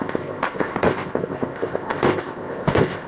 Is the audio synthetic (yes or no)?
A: yes